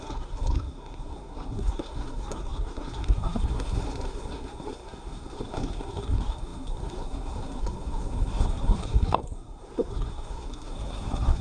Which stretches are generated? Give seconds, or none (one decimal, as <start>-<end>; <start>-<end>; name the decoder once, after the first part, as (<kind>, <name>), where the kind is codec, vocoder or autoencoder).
0.0-11.4 (codec, SNAC)